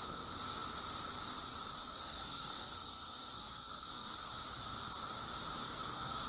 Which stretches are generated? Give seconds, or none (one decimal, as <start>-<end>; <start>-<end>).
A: 1.8-4.3; 5.6-6.3